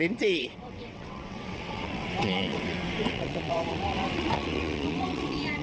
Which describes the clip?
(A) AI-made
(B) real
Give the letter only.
A